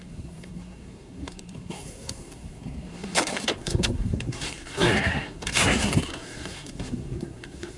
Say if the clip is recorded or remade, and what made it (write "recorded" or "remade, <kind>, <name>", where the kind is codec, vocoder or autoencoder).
remade, codec, SNAC